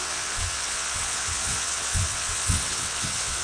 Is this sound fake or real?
fake